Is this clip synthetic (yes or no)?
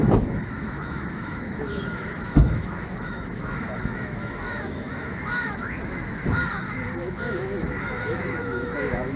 yes